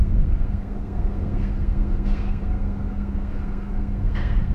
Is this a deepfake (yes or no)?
yes